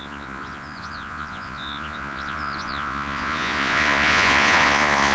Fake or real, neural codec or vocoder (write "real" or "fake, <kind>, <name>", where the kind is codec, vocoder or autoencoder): fake, vocoder, Vocos